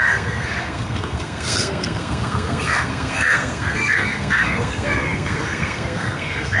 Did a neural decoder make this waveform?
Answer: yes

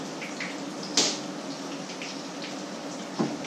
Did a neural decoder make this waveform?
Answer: no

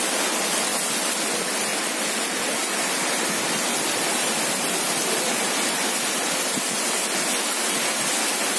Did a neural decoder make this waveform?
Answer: no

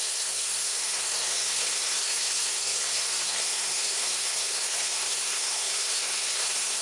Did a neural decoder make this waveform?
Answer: yes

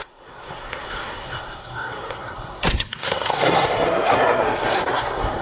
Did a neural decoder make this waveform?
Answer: yes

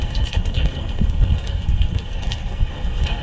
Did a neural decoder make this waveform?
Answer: yes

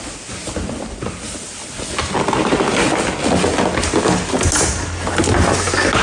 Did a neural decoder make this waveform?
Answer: no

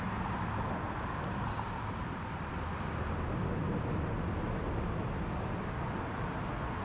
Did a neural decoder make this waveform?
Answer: no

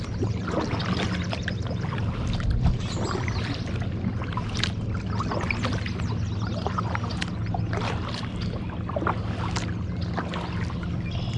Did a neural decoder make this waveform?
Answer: no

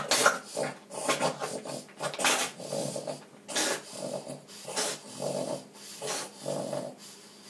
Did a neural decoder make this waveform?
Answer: no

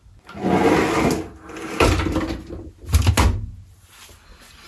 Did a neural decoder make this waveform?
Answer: no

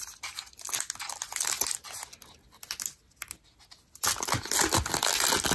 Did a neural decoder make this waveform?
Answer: no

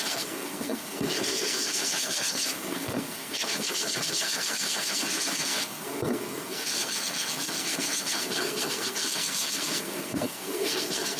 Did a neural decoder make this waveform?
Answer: yes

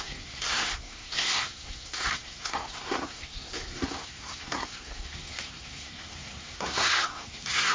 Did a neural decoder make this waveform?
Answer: yes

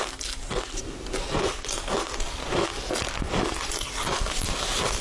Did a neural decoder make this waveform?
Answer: no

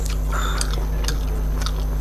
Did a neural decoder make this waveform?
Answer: no